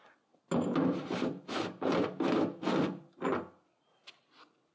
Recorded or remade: recorded